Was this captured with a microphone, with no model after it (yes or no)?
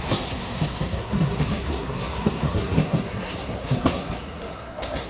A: no